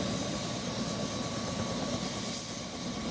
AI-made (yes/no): no